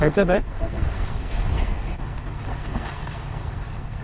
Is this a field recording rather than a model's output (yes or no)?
no